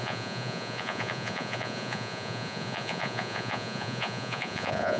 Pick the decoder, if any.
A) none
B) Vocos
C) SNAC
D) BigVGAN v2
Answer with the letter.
B